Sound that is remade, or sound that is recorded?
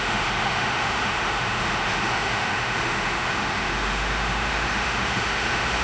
remade